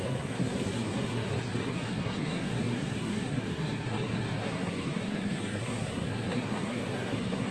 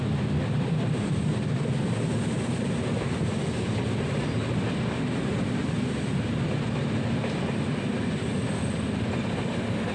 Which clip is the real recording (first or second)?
second